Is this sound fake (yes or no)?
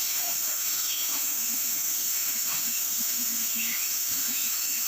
yes